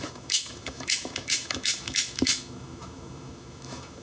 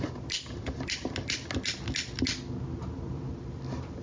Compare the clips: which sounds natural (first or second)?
second